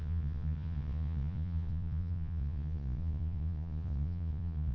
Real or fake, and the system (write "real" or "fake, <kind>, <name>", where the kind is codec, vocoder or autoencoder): fake, vocoder, Vocos